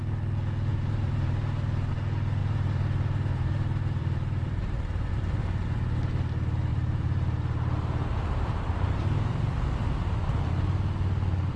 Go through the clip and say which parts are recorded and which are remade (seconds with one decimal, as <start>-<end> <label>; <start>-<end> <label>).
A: 0.0-0.7 recorded; 0.7-1.9 remade; 1.9-2.4 recorded; 2.4-5.1 remade; 5.1-6.7 recorded; 6.7-9.5 remade; 9.5-11.6 recorded